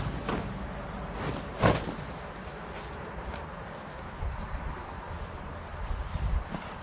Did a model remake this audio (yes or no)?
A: no